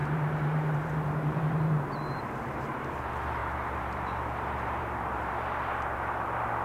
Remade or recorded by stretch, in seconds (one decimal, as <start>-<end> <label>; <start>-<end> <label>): 0.0-2.2 remade; 2.2-3.4 recorded; 3.4-5.7 remade; 5.7-6.6 recorded